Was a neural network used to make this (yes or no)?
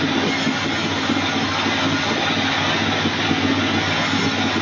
no